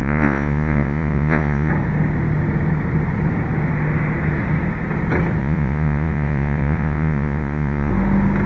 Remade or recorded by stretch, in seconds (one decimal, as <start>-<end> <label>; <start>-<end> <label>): 0.0-1.7 remade; 1.7-5.4 recorded; 5.4-7.9 remade; 7.9-8.5 recorded